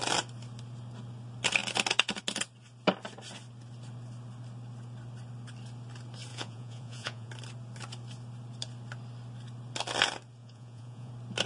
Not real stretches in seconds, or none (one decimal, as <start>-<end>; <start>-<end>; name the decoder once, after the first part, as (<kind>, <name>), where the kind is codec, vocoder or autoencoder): 6.3-7.3 (vocoder, Vocos); 10.4-11.1